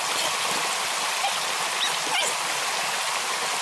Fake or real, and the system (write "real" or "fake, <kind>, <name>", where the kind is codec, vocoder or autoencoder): real